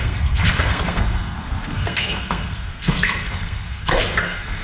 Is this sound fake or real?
fake